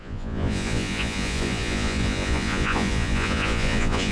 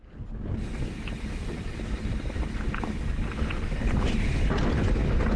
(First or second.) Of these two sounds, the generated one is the first